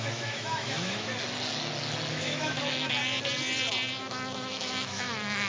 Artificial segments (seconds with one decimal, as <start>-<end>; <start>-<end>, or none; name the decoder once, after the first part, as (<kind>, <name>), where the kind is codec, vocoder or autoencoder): 0.0-1.1 (autoencoder, DAC-VAE); 2.1-3.0; 4.0-5.5